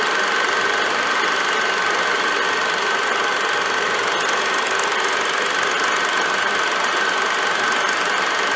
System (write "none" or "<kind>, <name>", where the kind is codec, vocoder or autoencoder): none